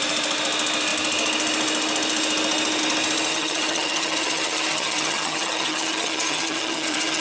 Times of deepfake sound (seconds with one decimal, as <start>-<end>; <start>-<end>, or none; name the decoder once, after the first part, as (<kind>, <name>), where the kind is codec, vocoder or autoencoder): 3.3-7.2 (vocoder, HiFi-GAN)